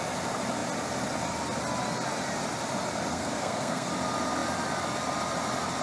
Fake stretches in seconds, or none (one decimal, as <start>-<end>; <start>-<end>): 3.1-3.9